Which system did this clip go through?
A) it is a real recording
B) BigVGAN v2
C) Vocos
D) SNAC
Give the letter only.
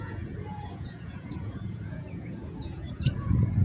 C